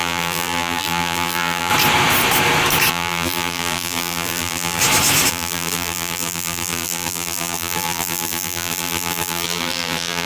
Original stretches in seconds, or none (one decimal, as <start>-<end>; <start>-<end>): 1.7-2.9; 4.8-5.3